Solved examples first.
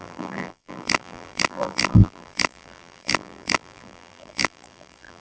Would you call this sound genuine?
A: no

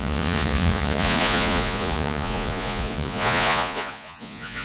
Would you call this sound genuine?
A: no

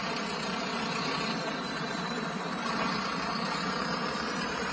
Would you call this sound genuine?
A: no